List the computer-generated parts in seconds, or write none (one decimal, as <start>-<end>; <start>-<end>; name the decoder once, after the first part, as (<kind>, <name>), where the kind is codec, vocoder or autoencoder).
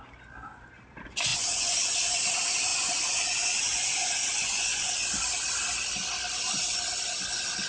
1.3-2.2 (vocoder, Vocos); 2.7-4.9